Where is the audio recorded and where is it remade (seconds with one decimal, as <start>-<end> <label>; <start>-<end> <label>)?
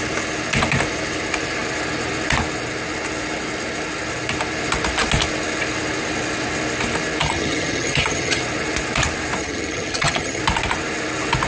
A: 0.0-7.2 recorded; 7.2-8.4 remade; 8.4-9.4 recorded; 9.4-10.4 remade; 10.4-11.5 recorded